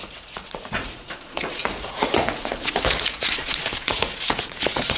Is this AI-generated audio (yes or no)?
yes